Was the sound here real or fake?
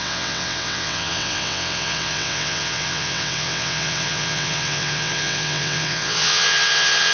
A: fake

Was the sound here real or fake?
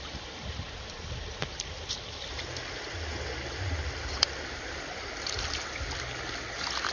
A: real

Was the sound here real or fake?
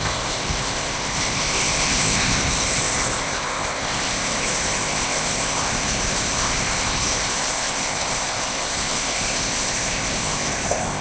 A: fake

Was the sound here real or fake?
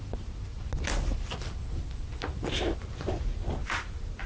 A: real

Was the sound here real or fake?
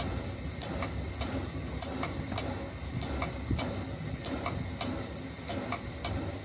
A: real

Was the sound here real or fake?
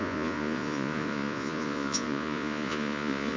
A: fake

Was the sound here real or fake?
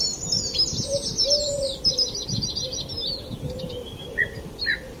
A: real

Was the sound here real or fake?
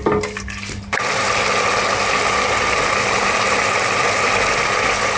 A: real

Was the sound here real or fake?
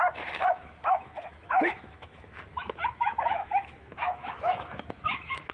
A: fake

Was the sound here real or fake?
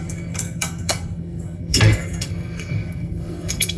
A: fake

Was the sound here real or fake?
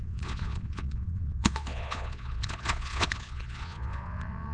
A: fake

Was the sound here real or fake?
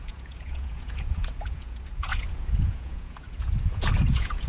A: fake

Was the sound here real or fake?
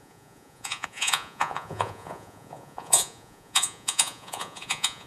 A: fake